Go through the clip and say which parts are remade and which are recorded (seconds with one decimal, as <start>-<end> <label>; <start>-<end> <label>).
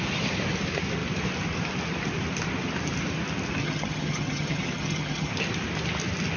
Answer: 0.0-3.6 recorded; 3.6-5.3 remade; 5.3-6.4 recorded